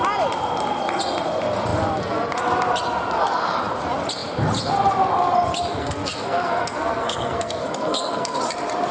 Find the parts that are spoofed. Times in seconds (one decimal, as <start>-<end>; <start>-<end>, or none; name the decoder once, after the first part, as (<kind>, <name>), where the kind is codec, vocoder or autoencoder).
5.8-8.4 (codec, SNAC)